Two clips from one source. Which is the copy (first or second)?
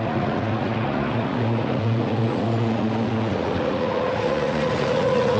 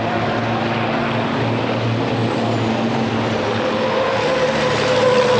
first